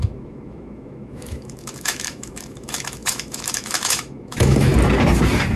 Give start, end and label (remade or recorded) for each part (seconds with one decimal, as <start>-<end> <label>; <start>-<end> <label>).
0.0-4.7 remade; 4.7-5.6 recorded